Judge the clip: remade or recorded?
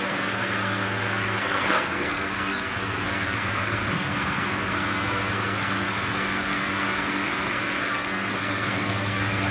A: remade